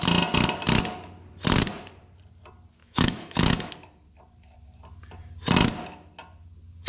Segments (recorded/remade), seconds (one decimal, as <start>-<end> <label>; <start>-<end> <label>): 0.0-2.8 recorded; 2.8-3.7 remade; 3.7-6.9 recorded